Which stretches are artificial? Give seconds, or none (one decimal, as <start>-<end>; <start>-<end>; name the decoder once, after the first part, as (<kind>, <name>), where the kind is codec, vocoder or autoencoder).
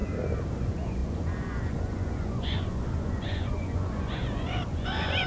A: 0.6-5.3 (vocoder, Vocos)